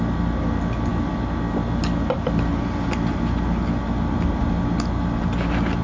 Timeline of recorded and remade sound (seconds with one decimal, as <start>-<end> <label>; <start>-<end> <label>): 0.0-5.8 recorded